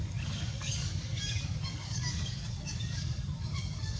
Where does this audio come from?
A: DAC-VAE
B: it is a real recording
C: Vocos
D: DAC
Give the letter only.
D